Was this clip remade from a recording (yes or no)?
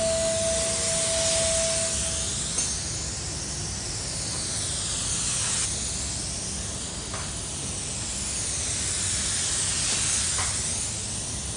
no